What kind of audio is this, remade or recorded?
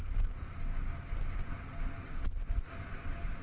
recorded